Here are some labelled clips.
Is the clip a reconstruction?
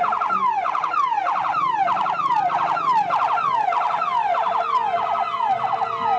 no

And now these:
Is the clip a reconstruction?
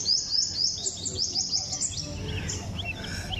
no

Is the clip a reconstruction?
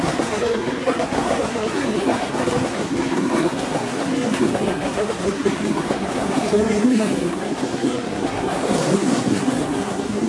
yes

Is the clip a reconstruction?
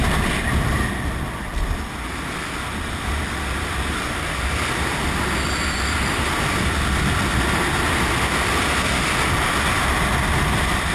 no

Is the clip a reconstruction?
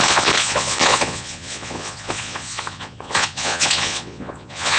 yes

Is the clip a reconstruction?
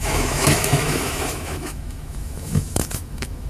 yes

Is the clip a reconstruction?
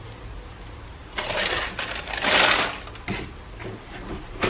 no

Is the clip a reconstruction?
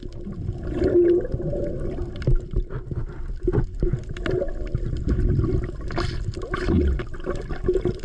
no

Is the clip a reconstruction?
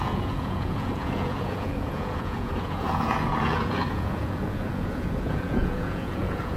yes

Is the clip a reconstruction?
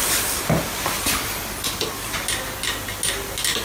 no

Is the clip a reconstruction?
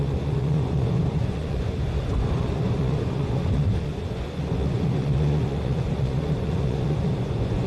yes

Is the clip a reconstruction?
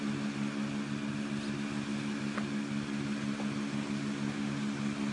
no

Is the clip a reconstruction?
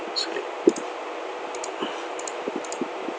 no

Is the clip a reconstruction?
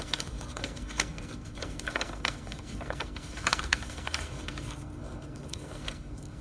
yes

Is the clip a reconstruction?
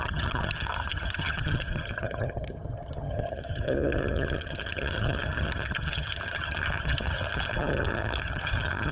yes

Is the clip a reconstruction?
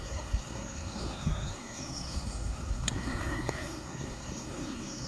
yes